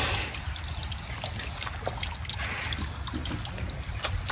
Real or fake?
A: real